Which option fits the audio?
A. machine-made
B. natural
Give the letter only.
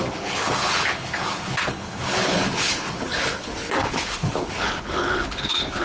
A